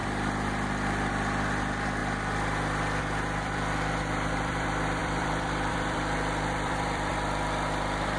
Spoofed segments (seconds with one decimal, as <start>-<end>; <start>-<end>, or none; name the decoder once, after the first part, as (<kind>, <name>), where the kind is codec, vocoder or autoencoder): 0.0-2.0 (vocoder, BigVGAN v2); 3.0-7.1